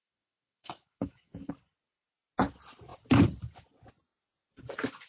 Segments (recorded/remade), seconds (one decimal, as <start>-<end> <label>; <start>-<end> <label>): 0.0-1.5 remade; 1.5-5.1 recorded